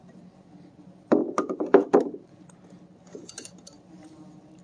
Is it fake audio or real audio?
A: real